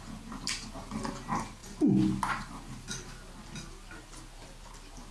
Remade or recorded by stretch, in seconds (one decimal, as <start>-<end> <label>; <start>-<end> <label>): 0.0-5.1 recorded